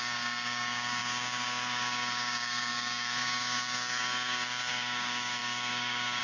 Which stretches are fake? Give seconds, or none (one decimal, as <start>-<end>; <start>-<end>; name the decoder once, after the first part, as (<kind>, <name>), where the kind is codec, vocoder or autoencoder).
0.0-6.2 (codec, DAC)